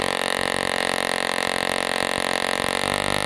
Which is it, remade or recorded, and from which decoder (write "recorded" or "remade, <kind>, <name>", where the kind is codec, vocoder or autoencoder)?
recorded